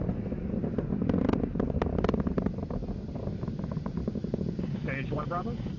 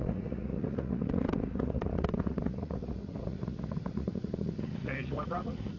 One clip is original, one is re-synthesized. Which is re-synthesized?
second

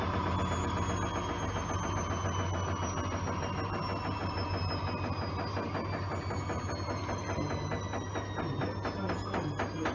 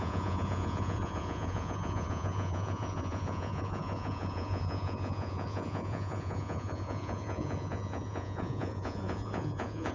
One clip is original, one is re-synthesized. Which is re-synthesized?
second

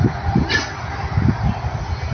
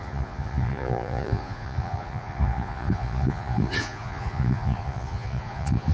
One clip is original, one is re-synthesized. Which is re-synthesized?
second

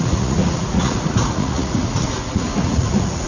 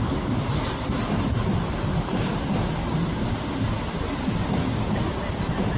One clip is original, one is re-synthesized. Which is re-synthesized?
first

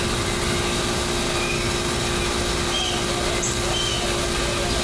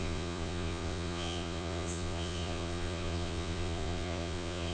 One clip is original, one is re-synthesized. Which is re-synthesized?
second